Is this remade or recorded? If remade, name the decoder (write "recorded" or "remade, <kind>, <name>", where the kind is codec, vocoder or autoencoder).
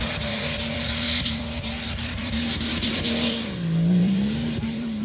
remade, vocoder, BigVGAN v2